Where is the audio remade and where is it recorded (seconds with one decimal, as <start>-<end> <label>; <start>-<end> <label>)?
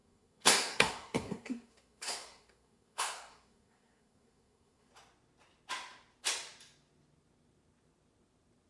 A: 0.0-4.9 remade; 4.9-8.7 recorded